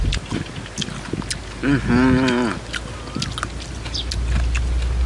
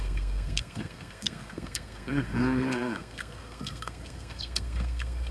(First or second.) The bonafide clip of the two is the first